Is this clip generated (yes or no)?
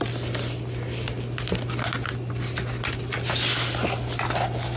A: no